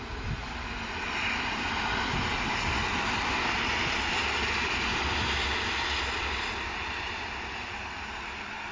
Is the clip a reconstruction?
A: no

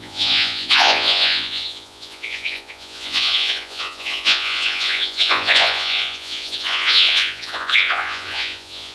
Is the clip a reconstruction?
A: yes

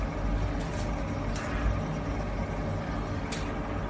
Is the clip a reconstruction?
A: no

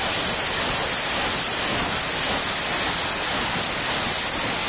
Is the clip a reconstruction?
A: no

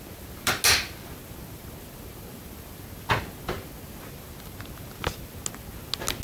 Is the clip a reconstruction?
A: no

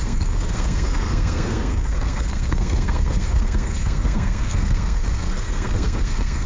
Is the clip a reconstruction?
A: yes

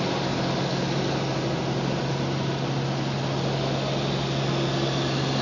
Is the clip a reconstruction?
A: no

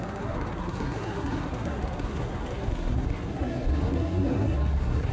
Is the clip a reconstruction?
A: yes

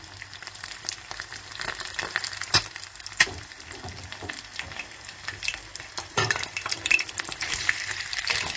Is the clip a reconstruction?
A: yes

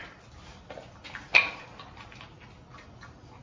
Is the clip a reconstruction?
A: no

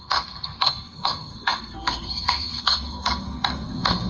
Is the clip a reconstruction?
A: yes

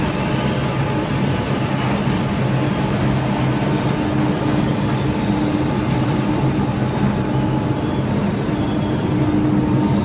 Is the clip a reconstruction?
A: no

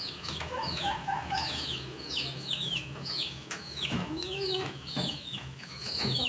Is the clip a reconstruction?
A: yes